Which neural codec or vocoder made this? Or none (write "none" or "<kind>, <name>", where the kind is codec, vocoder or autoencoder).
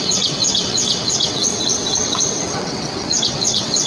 vocoder, WaveNeXt